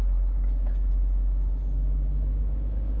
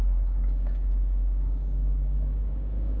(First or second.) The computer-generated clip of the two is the second